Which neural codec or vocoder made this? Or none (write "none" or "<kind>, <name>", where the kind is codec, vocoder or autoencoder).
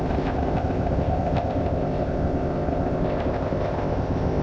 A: codec, ZipCodec